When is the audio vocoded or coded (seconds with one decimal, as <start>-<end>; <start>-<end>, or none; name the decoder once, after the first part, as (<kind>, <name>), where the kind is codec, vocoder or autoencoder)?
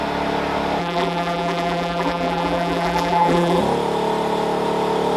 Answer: 0.8-3.6 (vocoder, BigVGAN v2)